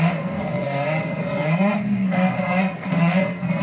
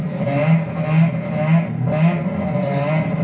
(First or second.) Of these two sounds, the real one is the second